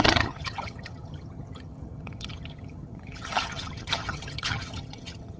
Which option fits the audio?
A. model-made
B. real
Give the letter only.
A